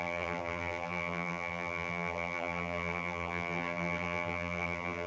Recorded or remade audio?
remade